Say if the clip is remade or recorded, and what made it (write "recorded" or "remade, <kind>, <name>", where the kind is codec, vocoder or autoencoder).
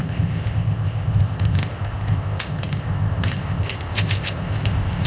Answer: remade, codec, ZipCodec